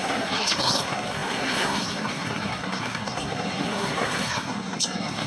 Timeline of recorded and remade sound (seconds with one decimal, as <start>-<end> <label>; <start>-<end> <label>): 0.0-5.3 remade